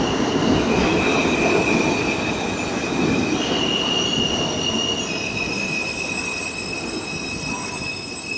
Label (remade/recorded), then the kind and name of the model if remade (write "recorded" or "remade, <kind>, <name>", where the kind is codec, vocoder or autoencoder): recorded